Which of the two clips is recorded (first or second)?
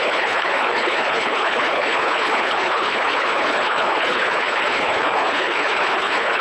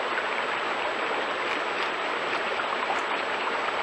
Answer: second